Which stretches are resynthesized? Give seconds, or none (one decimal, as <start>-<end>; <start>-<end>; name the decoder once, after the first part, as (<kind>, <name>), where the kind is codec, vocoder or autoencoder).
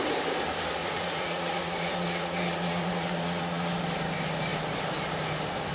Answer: 0.8-3.7 (vocoder, Vocos)